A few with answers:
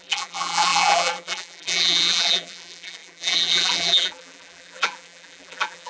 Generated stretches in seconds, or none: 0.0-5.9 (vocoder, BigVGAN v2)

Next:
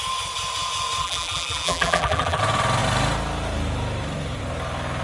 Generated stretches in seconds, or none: 1.0-2.4 (vocoder, BigVGAN v2)

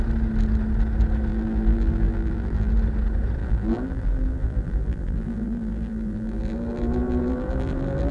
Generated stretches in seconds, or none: 1.3-2.7 (vocoder, BigVGAN v2); 3.4-8.1

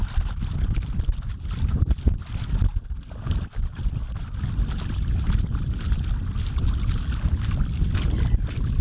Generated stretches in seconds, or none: none

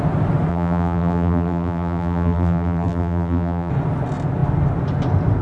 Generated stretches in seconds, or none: 0.5-3.7 (vocoder, BigVGAN v2)